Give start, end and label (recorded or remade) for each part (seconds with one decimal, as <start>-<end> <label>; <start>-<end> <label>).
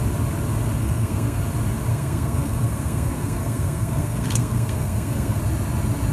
0.0-0.8 recorded; 0.8-1.4 remade; 1.4-1.9 recorded; 1.9-5.4 remade; 5.4-6.1 recorded